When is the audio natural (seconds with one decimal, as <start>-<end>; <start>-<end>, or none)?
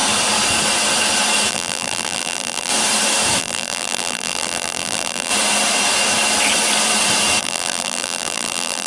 0.0-1.5; 2.7-3.4; 5.3-7.4